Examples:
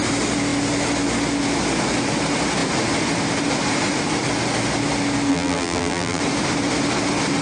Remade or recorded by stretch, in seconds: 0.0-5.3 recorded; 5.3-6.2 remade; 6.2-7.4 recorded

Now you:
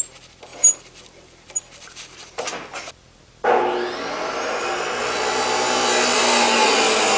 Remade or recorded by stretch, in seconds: 0.0-5.0 recorded; 5.0-6.2 remade; 6.2-7.2 recorded

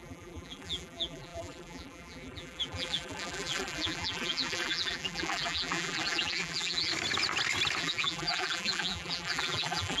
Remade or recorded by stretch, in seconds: 0.0-6.9 remade; 6.9-7.8 recorded; 7.8-10.0 remade

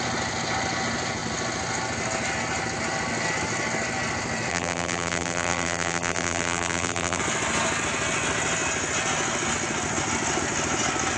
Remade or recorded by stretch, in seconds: 0.0-4.5 recorded; 4.5-7.2 remade; 7.2-11.2 recorded

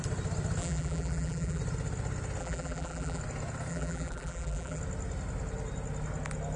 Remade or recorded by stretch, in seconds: 0.0-0.6 recorded; 0.6-1.6 remade; 1.6-2.4 recorded; 2.4-3.2 remade; 3.2-3.7 recorded; 3.7-4.8 remade; 4.8-6.6 recorded

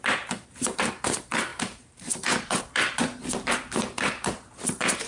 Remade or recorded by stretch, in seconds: 0.0-5.1 remade

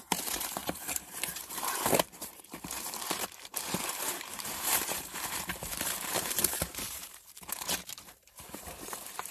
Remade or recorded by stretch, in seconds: 0.0-9.3 remade

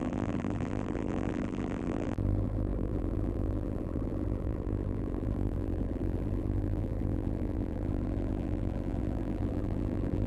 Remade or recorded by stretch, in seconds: 0.0-10.3 remade